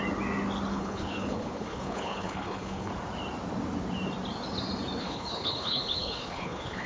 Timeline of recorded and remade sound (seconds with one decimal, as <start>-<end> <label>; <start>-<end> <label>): 0.0-0.7 recorded; 0.7-2.9 remade; 2.9-5.0 recorded; 5.0-6.9 remade